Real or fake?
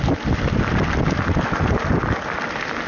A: real